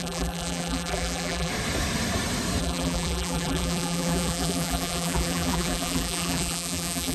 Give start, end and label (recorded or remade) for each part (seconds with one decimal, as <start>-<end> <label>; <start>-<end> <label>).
0.0-1.5 remade; 1.5-2.6 recorded; 2.6-7.1 remade